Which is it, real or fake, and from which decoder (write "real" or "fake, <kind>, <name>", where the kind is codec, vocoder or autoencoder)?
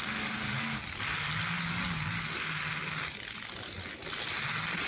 real